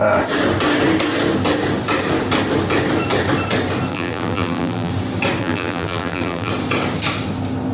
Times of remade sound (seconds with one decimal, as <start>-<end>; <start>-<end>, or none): 3.9-4.9; 5.4-6.5